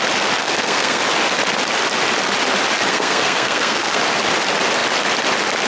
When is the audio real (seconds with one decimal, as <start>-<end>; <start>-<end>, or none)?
0.0-0.4; 1.0-2.9; 4.0-5.7